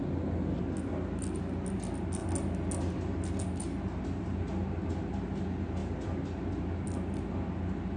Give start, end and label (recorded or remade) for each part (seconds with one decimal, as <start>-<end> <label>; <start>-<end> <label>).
0.0-8.0 recorded